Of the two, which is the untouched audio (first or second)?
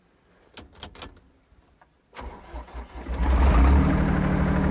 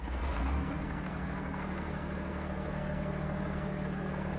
first